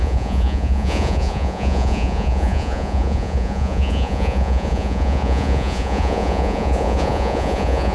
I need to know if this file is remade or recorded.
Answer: remade